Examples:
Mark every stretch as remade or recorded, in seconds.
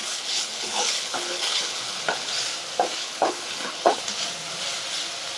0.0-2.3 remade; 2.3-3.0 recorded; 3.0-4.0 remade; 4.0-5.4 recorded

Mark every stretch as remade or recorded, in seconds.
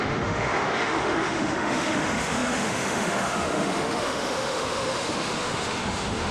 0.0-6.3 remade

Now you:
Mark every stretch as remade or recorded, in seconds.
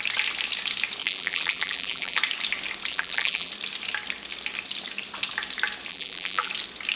0.0-1.0 recorded; 1.0-2.2 remade; 2.2-2.9 recorded; 2.9-3.5 remade; 3.5-5.9 recorded; 5.9-6.5 remade; 6.5-7.0 recorded